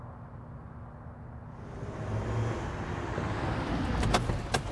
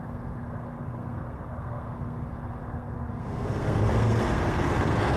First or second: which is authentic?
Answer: first